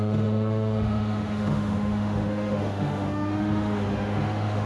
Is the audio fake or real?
fake